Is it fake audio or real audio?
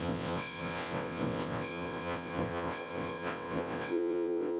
fake